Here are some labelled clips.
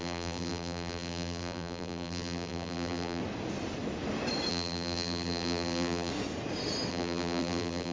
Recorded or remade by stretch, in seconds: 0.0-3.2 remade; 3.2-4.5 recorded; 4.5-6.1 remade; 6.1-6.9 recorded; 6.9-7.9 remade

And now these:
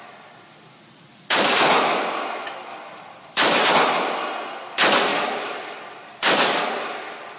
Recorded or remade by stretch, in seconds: 0.0-1.1 recorded; 1.1-2.0 remade; 2.0-2.7 recorded; 2.7-3.7 remade; 3.7-5.1 recorded; 5.1-6.6 remade; 6.6-7.4 recorded

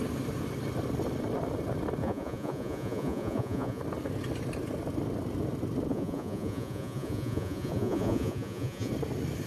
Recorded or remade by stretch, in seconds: 0.0-2.0 recorded; 2.0-3.8 remade; 3.8-5.9 recorded; 5.9-8.9 remade; 8.9-9.5 recorded

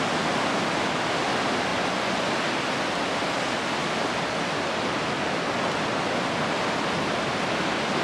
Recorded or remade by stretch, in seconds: 0.0-1.7 recorded; 1.7-2.3 remade; 2.3-8.0 recorded

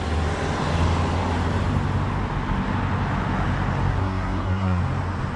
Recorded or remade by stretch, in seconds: 0.0-3.9 recorded; 3.9-4.8 remade; 4.8-5.4 recorded

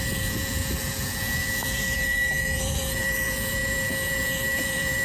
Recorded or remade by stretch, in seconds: 0.0-5.0 remade